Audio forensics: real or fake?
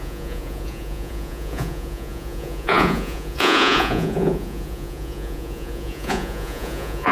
fake